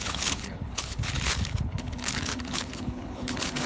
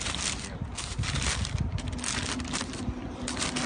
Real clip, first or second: second